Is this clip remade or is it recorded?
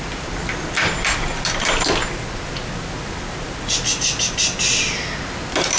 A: recorded